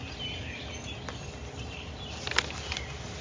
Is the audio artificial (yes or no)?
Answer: no